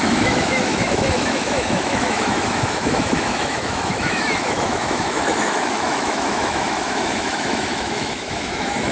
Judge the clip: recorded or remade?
remade